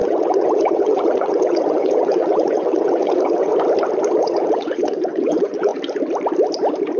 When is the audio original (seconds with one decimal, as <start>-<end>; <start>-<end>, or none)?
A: 3.5-4.2; 5.7-7.0